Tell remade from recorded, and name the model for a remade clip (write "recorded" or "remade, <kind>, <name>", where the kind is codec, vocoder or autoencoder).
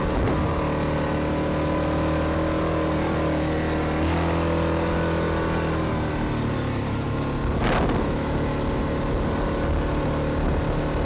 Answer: recorded